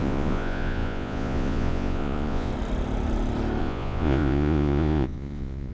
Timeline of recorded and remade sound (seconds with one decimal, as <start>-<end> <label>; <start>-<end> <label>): 0.0-2.5 remade; 2.5-3.6 recorded; 3.6-5.7 remade